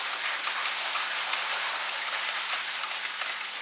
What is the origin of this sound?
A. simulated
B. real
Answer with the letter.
B